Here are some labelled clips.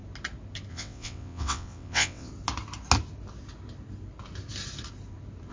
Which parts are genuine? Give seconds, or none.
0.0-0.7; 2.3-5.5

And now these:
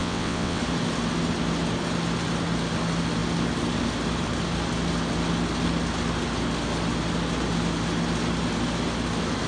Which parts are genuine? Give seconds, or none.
0.6-9.5